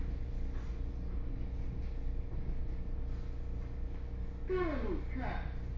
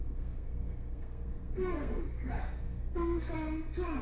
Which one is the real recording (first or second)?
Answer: first